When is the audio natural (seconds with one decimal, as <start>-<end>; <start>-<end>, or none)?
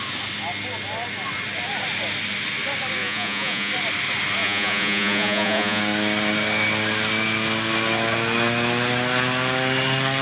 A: 0.0-3.0; 3.7-4.4; 5.8-10.2